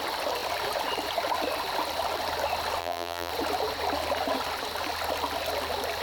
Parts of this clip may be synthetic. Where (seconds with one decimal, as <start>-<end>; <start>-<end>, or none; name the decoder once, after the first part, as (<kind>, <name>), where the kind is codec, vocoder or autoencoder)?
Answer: 2.8-3.3 (vocoder, BigVGAN v2)